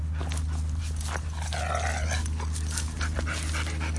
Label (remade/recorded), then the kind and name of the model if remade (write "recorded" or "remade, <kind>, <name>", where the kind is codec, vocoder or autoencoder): recorded